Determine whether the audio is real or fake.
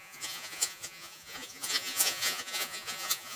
fake